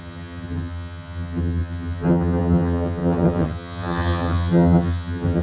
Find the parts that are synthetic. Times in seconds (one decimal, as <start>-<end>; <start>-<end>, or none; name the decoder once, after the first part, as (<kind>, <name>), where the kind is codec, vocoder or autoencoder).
0.0-5.4 (vocoder, HiFi-GAN)